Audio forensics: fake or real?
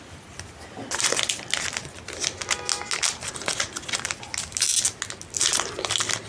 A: real